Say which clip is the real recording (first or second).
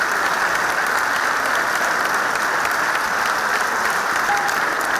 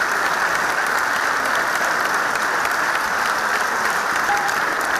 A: first